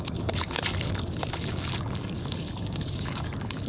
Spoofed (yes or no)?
yes